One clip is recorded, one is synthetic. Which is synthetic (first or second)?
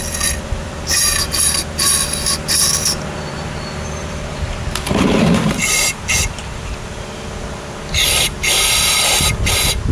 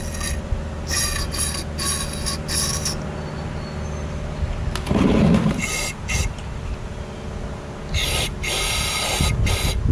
first